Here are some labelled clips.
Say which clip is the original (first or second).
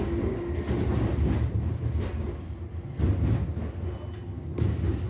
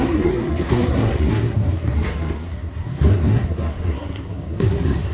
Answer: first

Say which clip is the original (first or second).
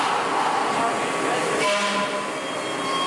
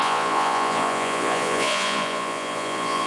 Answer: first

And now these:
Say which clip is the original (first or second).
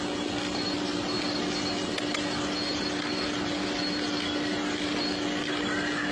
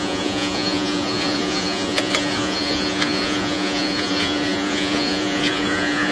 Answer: first